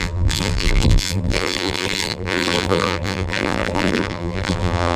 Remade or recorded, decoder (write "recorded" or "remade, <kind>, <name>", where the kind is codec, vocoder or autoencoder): remade, vocoder, BigVGAN v2